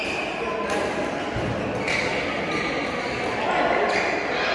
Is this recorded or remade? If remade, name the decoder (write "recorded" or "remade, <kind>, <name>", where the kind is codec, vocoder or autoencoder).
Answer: recorded